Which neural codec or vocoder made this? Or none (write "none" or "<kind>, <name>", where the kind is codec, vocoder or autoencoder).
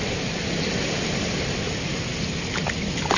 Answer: none